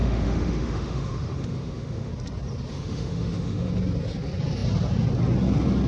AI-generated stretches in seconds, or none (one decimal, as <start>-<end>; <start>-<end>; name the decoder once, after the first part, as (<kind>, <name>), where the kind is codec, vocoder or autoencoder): 0.0-2.1 (autoencoder, DAC-VAE); 2.7-3.7